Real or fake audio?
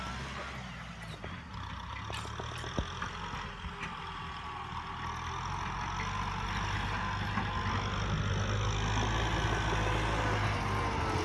real